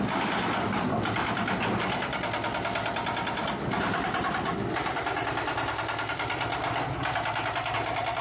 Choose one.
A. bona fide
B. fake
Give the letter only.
A